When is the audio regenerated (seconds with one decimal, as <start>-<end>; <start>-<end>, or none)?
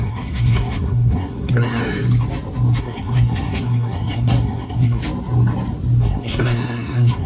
0.0-1.8; 2.8-5.0; 6.0-7.3